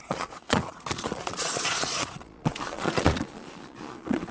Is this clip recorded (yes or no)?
no